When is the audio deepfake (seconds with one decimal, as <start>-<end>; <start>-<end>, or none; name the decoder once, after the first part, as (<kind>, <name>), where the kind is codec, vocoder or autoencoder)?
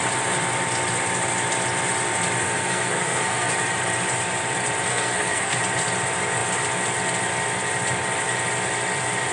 2.4-3.5 (codec, SNAC); 4.9-5.6